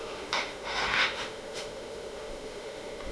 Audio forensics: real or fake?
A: fake